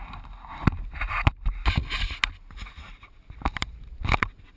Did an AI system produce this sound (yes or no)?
no